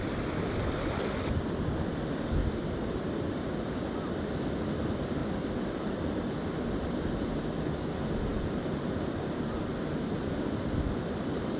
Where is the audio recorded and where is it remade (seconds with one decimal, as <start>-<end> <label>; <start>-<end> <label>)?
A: 0.0-2.4 recorded; 2.4-3.8 remade; 3.8-11.6 recorded